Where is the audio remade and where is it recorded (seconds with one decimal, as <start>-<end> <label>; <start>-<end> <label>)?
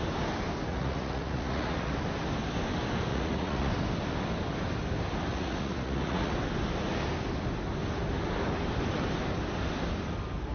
0.0-0.7 recorded; 0.7-1.9 remade; 1.9-3.1 recorded; 3.1-3.7 remade; 3.7-5.3 recorded; 5.3-6.3 remade; 6.3-10.5 recorded